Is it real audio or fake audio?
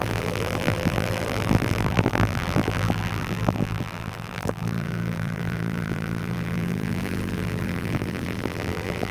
fake